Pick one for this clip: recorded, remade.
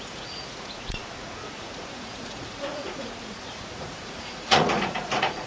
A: remade